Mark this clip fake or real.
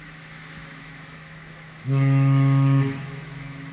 fake